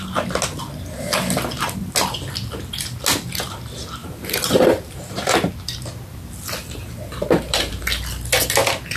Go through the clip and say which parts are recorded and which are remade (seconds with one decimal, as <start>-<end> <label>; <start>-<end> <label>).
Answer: 0.0-4.0 recorded; 4.0-5.5 remade; 5.5-6.6 recorded; 6.6-7.8 remade; 7.8-9.0 recorded

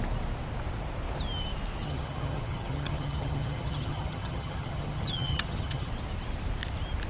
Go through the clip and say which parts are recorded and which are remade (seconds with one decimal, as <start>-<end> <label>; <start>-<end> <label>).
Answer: 0.0-1.8 recorded; 1.8-5.9 remade; 5.9-7.1 recorded

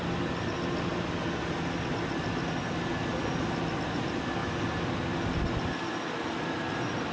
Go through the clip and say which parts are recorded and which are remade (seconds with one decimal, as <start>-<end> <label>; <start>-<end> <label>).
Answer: 0.0-7.1 recorded

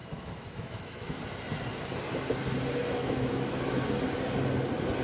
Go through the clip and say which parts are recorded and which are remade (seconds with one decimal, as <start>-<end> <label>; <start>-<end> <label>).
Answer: 0.0-1.2 remade; 1.2-2.8 recorded; 2.8-3.8 remade; 3.8-5.0 recorded

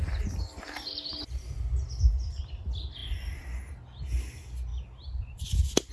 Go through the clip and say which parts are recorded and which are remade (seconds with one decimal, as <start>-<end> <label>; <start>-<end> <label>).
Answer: 0.0-1.1 recorded; 1.1-1.6 remade; 1.6-4.7 recorded; 4.7-5.9 remade

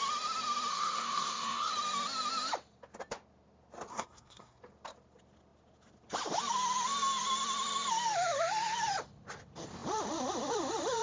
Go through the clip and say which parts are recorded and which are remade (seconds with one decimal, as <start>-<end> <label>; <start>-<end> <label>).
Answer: 0.0-0.7 recorded; 0.7-1.7 remade; 1.7-3.9 recorded; 3.9-4.6 remade; 4.6-11.0 recorded

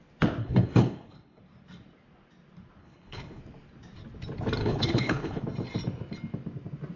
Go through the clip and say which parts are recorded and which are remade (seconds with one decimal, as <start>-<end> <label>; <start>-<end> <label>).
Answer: 0.0-0.4 recorded; 0.4-1.4 remade; 1.4-2.8 recorded; 2.8-3.4 remade; 3.4-4.6 recorded; 4.6-5.4 remade; 5.4-7.0 recorded

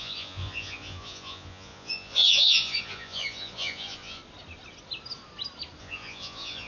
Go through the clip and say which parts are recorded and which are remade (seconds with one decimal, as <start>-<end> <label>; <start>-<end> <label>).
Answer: 0.0-4.2 remade; 4.2-5.8 recorded; 5.8-6.7 remade